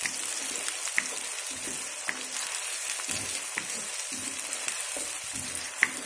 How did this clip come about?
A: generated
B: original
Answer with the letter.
B